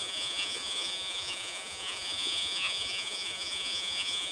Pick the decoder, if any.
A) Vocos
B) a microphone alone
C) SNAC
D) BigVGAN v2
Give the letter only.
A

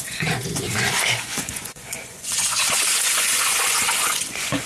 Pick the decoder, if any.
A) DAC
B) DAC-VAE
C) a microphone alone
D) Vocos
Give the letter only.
D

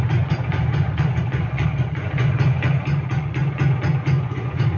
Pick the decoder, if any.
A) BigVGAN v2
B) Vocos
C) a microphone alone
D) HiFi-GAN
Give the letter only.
B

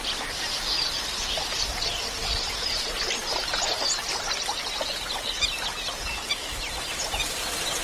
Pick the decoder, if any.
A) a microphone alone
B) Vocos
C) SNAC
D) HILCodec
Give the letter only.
A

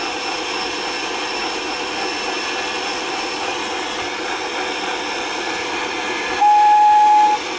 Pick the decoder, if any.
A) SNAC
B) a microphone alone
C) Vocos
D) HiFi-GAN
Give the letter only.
B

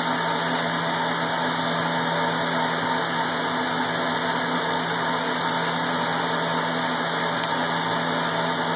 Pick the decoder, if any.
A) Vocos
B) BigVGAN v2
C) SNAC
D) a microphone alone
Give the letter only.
D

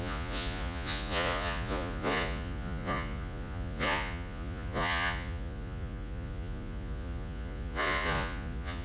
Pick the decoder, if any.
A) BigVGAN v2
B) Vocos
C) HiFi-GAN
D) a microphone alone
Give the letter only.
B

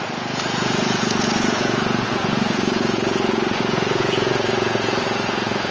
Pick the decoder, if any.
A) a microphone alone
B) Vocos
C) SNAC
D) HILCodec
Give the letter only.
B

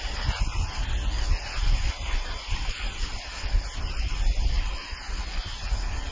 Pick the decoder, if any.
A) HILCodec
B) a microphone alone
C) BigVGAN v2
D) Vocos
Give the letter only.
B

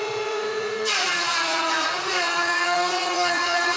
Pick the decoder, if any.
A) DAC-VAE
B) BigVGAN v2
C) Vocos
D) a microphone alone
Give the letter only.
C